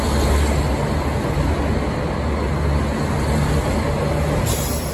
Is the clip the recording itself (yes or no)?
yes